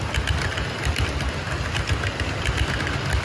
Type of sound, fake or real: real